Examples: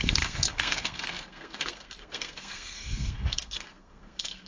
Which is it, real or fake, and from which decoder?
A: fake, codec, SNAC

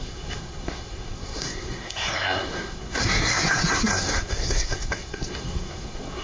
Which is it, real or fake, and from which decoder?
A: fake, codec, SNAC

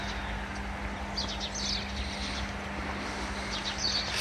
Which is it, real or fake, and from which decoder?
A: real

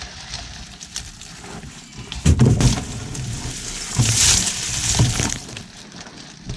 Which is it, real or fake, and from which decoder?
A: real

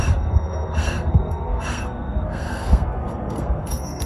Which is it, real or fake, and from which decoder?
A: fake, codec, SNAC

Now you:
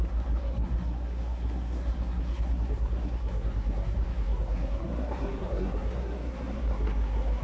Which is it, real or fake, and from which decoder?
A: fake, codec, SNAC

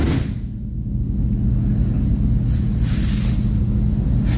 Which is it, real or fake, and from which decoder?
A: real